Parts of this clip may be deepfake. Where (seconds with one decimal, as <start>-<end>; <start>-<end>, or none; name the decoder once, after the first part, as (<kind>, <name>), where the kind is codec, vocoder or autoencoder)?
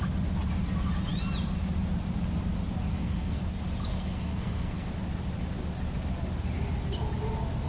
2.9-3.4 (codec, SNAC); 3.9-4.9